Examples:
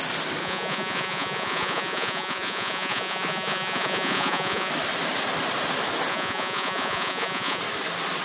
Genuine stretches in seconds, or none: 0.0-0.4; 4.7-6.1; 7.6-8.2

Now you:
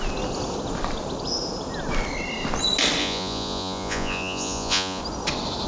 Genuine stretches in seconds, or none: 0.0-3.0; 5.0-5.7